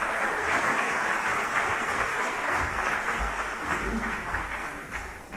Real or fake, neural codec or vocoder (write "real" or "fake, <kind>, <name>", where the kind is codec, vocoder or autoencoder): fake, codec, SNAC